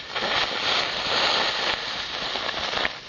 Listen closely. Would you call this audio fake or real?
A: real